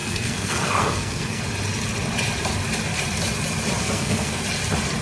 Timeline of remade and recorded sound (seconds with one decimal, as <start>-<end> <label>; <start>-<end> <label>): 0.0-1.4 remade; 1.4-3.8 recorded; 3.8-4.4 remade; 4.4-5.0 recorded